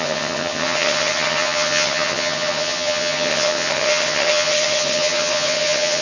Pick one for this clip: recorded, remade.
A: remade